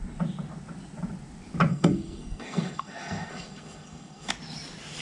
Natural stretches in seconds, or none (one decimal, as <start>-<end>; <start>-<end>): 0.0-1.7; 4.3-5.0